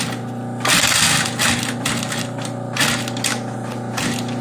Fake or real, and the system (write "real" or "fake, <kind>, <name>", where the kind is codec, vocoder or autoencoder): real